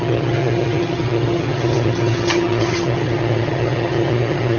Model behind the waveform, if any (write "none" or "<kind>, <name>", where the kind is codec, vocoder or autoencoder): vocoder, HiFi-GAN